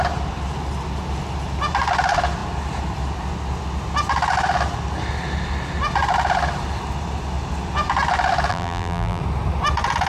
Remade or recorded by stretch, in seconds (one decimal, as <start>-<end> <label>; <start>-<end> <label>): 0.0-8.5 recorded; 8.5-9.2 remade; 9.2-10.1 recorded